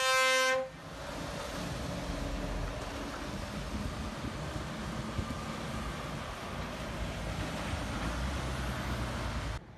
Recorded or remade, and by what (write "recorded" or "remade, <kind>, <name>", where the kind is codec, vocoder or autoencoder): recorded